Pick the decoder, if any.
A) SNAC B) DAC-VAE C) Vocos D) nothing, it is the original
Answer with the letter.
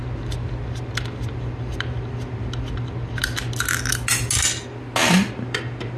D